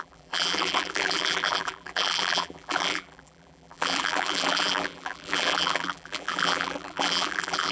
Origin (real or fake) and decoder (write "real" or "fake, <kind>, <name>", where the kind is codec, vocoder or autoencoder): fake, vocoder, BigVGAN v2